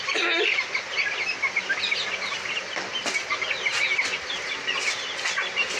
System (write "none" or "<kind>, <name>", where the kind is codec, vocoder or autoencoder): none